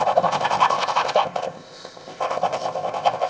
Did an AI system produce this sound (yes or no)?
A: yes